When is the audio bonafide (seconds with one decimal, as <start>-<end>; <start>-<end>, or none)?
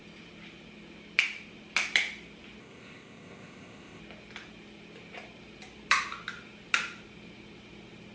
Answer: 0.0-2.6; 4.0-8.1